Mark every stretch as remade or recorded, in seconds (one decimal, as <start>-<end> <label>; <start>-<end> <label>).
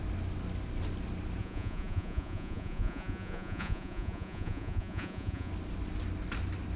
0.0-1.4 recorded; 1.4-5.5 remade; 5.5-6.8 recorded